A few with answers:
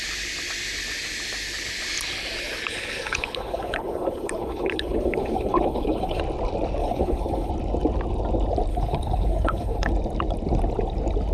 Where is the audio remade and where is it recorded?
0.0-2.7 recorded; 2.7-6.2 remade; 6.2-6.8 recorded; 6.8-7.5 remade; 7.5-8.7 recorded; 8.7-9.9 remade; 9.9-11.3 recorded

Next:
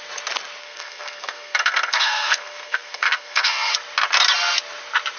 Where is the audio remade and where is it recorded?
0.0-0.6 recorded; 0.6-3.7 remade; 3.7-5.2 recorded

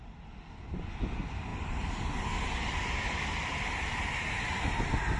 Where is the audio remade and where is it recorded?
0.0-5.2 recorded

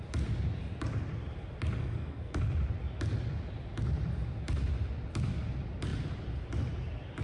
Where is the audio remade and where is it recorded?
0.0-1.8 recorded; 1.8-2.4 remade; 2.4-7.2 recorded

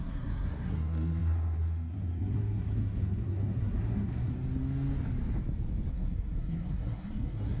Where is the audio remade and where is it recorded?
0.0-4.3 remade; 4.3-5.9 recorded; 5.9-7.6 remade

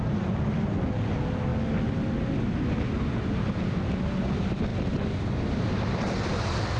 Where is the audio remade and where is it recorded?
0.0-6.8 recorded

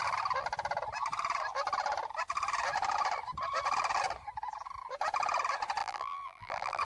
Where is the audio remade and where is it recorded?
0.0-5.8 recorded; 5.8-6.8 remade